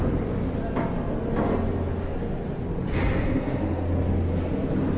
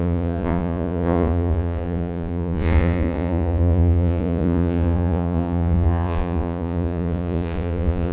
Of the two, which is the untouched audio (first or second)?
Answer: first